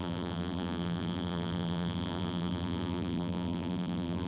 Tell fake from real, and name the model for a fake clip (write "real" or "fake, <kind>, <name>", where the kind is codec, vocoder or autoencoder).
fake, vocoder, BigVGAN v2